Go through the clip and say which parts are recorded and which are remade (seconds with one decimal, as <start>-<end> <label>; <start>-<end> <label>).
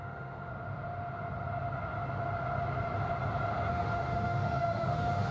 0.0-0.5 remade; 0.5-3.7 recorded; 3.7-5.3 remade